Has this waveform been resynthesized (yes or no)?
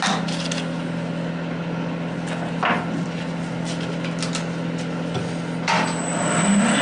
no